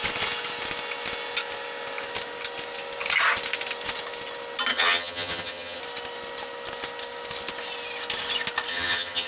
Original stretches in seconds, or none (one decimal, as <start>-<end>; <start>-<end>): 0.0-4.7; 5.8-8.7

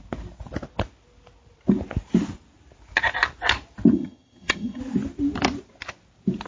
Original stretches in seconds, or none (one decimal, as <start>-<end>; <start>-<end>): 0.0-3.9; 4.8-6.5

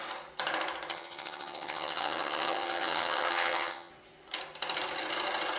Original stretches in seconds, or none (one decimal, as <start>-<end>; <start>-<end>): 0.0-0.9; 3.9-5.6